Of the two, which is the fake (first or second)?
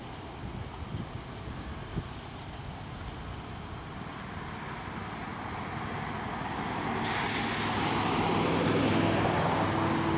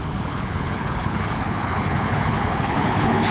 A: second